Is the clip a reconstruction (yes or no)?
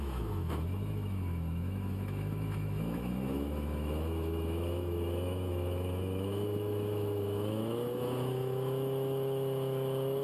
yes